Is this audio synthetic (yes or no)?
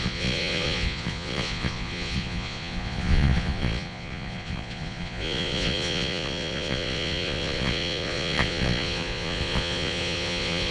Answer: yes